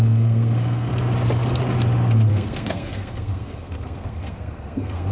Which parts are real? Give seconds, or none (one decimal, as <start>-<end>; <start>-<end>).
0.9-2.3